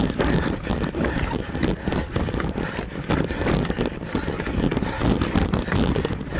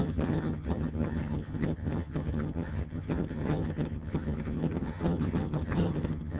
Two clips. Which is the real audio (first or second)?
first